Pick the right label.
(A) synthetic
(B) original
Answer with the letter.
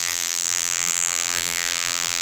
A